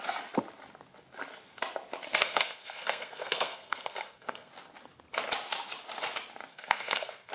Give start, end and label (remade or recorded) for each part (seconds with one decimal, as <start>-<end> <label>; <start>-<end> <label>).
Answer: 0.0-2.2 recorded; 2.2-4.5 remade; 4.5-6.5 recorded; 6.5-7.3 remade

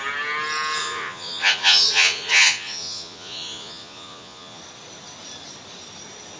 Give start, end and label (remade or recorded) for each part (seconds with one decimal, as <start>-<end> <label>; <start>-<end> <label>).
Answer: 0.0-0.8 recorded; 0.8-4.6 remade; 4.6-6.4 recorded

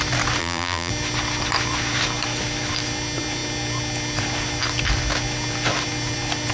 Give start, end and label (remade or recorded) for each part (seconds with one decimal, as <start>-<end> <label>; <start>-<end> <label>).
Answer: 0.0-0.4 recorded; 0.4-0.9 remade; 0.9-6.5 recorded